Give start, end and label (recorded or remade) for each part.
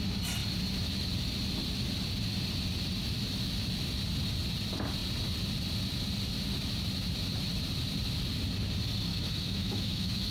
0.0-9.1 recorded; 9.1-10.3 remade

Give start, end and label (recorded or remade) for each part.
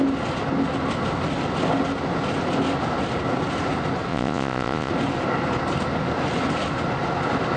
0.0-4.1 recorded; 4.1-4.9 remade; 4.9-7.6 recorded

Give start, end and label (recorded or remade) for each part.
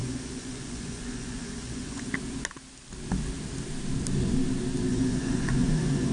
0.0-2.1 remade; 2.1-4.9 recorded; 4.9-6.1 remade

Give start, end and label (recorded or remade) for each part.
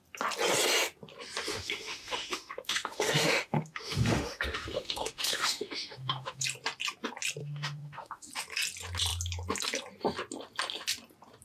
0.0-1.5 recorded; 1.5-6.4 remade; 6.4-7.4 recorded; 7.4-8.3 remade; 8.3-11.4 recorded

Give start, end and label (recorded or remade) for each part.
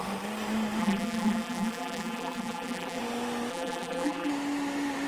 0.0-0.8 recorded; 0.8-3.0 remade; 3.0-3.5 recorded; 3.5-4.3 remade; 4.3-5.1 recorded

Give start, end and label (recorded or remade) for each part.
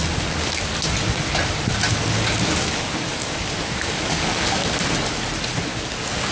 0.0-0.7 remade; 0.7-1.9 recorded; 1.9-4.8 remade; 4.8-5.7 recorded; 5.7-6.3 remade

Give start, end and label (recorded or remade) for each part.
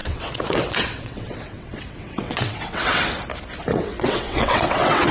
0.0-3.1 remade; 3.1-3.7 recorded; 3.7-5.1 remade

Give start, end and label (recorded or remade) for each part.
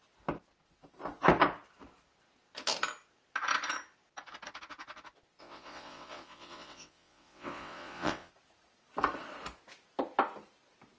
0.0-5.4 recorded; 5.4-8.3 remade; 8.3-11.0 recorded